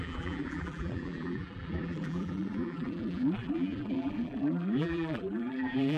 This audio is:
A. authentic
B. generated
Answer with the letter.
B